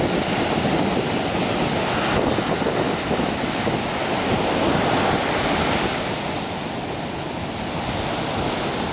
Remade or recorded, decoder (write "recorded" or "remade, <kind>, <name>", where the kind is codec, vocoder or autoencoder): recorded